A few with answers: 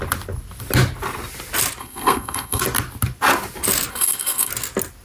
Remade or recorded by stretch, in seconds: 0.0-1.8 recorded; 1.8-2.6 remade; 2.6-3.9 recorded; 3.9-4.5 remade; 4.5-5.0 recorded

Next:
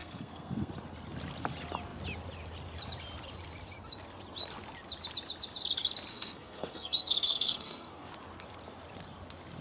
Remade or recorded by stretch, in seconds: 0.0-0.7 remade; 0.7-6.1 recorded; 6.1-8.1 remade; 8.1-9.6 recorded

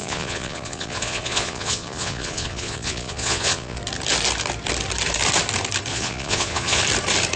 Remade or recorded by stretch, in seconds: 0.0-3.8 remade; 3.8-5.9 recorded; 5.9-6.8 remade; 6.8-7.4 recorded

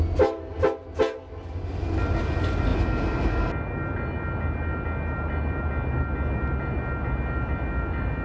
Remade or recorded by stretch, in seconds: 0.0-8.2 recorded